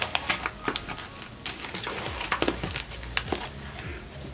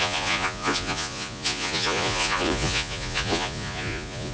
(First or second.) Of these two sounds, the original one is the first